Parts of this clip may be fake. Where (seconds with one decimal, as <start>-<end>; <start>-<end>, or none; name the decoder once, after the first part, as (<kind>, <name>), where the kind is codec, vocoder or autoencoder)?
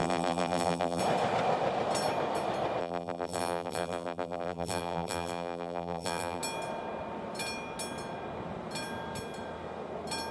0.0-1.0 (vocoder, BigVGAN v2); 2.8-6.4